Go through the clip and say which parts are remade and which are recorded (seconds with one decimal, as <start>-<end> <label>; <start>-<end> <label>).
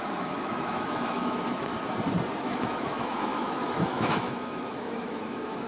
0.0-1.7 remade; 1.7-2.4 recorded; 2.4-5.7 remade